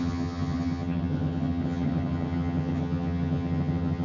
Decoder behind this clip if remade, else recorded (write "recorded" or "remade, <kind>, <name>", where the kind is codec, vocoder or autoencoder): remade, vocoder, HiFi-GAN